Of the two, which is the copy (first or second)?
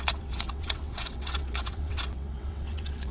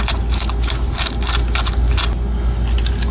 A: first